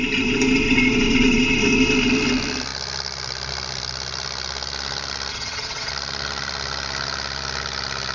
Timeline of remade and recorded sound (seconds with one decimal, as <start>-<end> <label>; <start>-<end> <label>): 0.0-5.3 recorded; 5.3-5.9 remade; 5.9-8.1 recorded